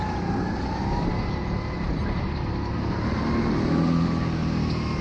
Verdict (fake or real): real